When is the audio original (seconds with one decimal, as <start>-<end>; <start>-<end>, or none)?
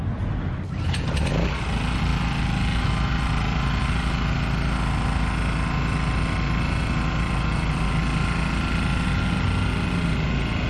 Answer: 0.0-10.7